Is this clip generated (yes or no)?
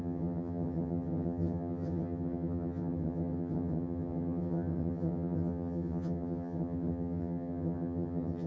yes